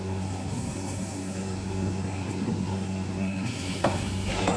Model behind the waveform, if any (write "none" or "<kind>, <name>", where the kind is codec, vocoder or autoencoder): codec, SNAC